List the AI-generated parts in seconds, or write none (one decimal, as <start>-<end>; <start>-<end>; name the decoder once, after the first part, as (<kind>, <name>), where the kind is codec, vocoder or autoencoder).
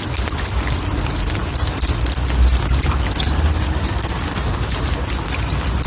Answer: none